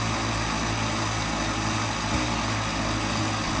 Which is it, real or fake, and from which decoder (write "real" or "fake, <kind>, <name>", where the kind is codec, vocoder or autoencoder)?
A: real